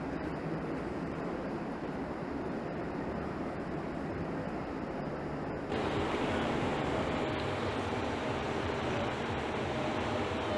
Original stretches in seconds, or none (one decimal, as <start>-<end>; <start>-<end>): 5.1-6.1; 6.7-7.7